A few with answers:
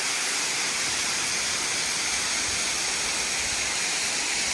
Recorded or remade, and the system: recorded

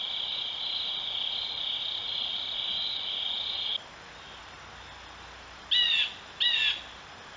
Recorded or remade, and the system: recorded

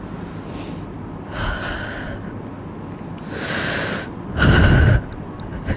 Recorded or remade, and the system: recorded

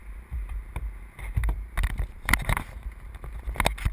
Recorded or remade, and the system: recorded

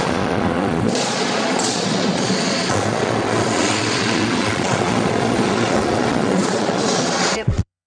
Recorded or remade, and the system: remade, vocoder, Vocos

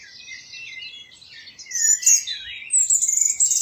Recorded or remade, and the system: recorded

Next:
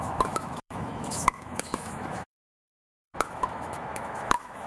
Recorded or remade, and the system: remade, autoencoder, DAC-VAE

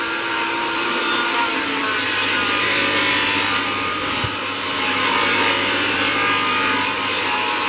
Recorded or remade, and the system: remade, vocoder, BigVGAN v2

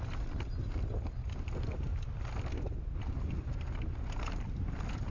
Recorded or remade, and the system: recorded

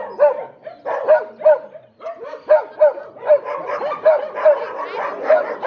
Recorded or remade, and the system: recorded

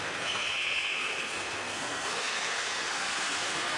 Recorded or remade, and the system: remade, codec, SNAC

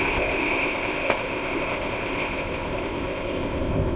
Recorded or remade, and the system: remade, codec, ZipCodec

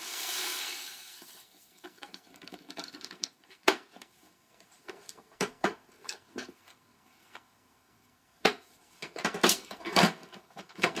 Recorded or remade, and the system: remade, codec, SNAC